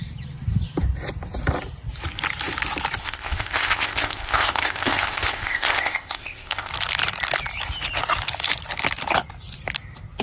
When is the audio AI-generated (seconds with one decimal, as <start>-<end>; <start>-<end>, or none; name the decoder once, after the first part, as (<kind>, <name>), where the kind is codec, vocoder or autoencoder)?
3.0-6.7 (codec, ZipCodec)